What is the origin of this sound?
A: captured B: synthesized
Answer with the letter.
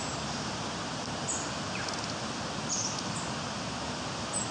A